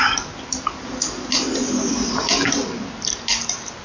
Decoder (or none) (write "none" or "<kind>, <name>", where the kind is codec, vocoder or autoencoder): none